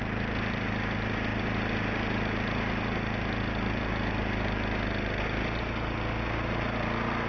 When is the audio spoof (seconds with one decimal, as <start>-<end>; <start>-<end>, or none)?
none